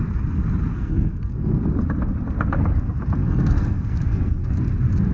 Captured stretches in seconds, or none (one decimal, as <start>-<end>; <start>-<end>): 0.0-0.7; 1.6-3.2; 4.6-5.1